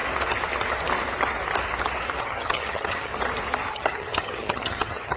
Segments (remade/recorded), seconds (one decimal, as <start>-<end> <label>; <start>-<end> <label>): 0.0-2.2 recorded; 2.2-3.1 remade; 3.1-3.7 recorded; 3.7-5.2 remade